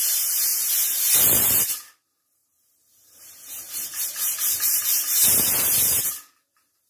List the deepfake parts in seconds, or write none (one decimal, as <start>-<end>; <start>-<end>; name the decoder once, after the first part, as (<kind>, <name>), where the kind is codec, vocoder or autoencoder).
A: none